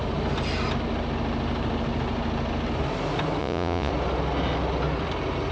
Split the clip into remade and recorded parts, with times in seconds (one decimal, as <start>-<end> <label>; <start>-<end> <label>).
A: 0.0-3.4 recorded; 3.4-3.9 remade; 3.9-5.5 recorded